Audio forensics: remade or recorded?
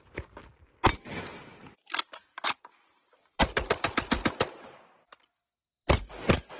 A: recorded